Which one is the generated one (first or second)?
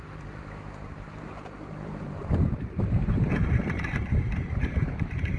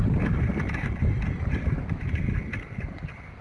first